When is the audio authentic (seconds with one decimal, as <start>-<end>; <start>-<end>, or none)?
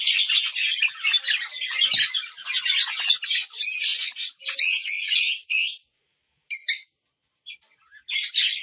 0.0-3.9; 6.0-8.6